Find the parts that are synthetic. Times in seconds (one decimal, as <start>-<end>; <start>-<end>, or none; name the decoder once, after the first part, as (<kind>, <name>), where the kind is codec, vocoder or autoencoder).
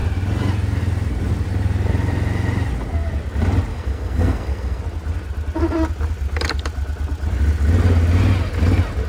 3.7-4.8 (codec, SNAC)